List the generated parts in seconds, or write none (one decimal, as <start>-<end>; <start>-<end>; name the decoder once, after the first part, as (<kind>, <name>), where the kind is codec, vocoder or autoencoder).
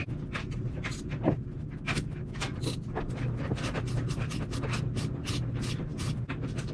none